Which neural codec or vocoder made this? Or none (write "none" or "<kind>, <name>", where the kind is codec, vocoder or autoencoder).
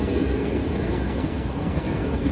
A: codec, SNAC